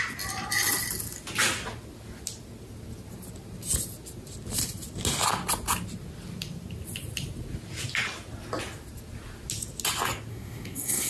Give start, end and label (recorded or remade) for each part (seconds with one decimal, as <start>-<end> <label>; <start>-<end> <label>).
0.0-10.3 recorded; 10.3-11.1 remade